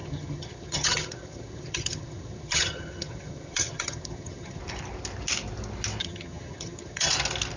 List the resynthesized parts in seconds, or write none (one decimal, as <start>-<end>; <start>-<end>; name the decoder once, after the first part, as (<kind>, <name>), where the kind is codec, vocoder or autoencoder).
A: 0.0-4.6 (vocoder, HiFi-GAN); 6.0-7.1